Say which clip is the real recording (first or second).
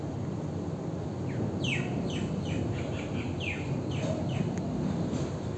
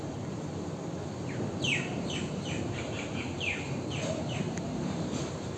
first